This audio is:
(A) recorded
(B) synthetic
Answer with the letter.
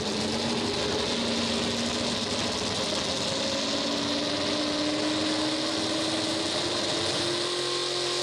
A